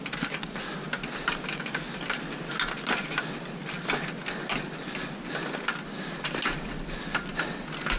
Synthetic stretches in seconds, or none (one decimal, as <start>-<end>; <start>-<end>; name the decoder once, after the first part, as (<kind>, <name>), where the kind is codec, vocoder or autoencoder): none